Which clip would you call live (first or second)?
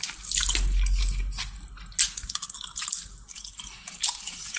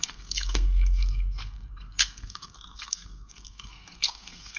first